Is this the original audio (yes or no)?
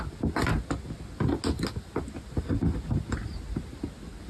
yes